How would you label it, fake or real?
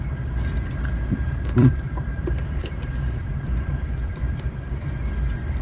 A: fake